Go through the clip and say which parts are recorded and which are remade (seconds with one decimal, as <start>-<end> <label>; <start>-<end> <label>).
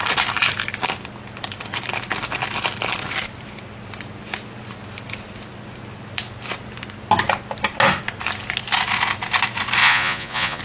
0.0-9.8 recorded; 9.8-10.6 remade